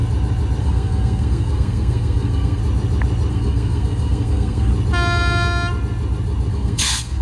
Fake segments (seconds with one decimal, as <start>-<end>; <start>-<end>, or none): 0.6-2.6; 3.3-4.7; 6.5-7.2

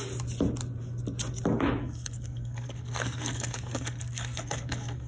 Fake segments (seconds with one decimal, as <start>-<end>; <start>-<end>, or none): 1.8-5.1

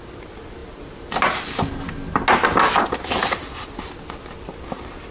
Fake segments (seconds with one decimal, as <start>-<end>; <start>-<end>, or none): none

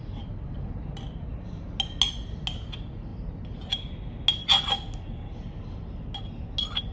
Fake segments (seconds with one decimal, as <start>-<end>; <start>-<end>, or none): none

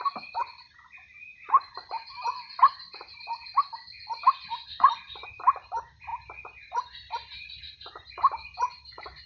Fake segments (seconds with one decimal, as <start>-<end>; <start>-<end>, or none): none